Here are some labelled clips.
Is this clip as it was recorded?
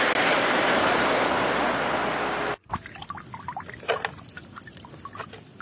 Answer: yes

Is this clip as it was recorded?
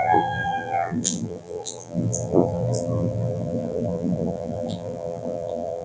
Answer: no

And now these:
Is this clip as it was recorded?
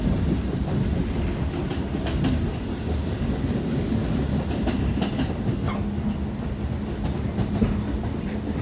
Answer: yes